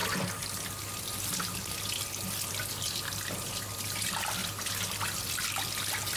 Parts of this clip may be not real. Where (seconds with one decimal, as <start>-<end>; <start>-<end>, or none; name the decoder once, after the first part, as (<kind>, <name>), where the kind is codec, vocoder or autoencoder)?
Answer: none